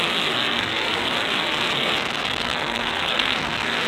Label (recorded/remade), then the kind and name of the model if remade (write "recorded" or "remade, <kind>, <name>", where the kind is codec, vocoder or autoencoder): remade, codec, SNAC